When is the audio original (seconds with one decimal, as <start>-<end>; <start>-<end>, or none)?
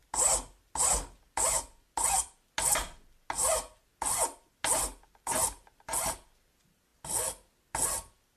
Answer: 0.0-8.4